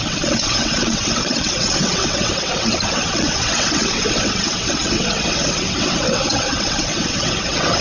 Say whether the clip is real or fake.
fake